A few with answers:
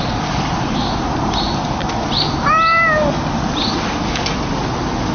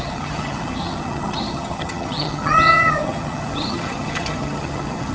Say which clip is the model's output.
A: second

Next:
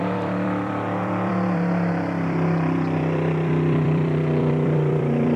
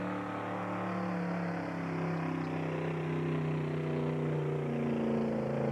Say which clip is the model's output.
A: first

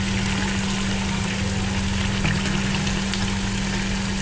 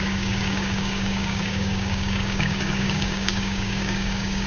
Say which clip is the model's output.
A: second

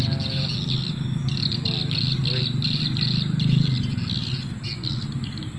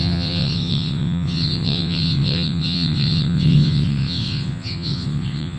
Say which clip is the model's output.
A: second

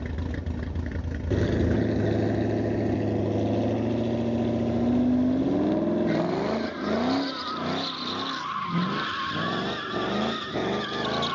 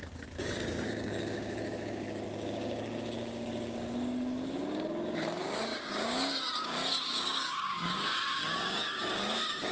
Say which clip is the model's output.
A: second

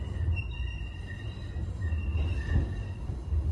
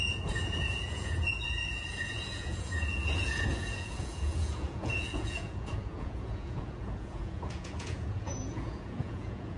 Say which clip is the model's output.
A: second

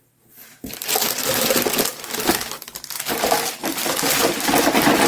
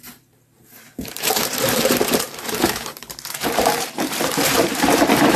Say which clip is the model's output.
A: second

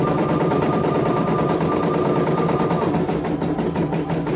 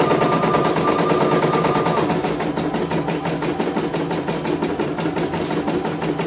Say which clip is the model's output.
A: first